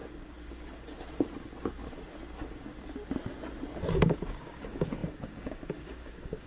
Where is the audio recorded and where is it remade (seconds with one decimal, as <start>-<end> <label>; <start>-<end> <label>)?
0.0-3.9 recorded; 3.9-6.5 remade